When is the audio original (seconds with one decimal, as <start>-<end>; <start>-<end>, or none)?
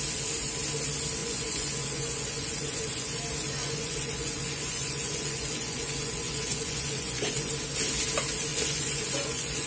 0.0-1.2; 3.2-3.6; 7.5-8.5